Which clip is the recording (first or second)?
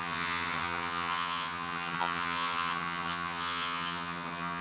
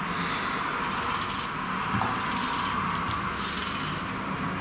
second